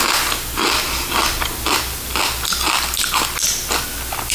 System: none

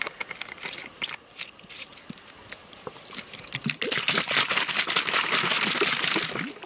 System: none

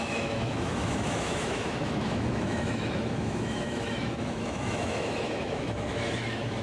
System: autoencoder, DAC-VAE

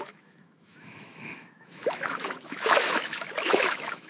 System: autoencoder, DAC-VAE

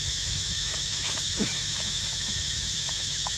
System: autoencoder, DAC-VAE